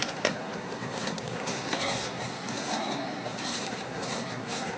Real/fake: fake